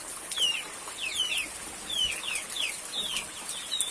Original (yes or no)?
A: yes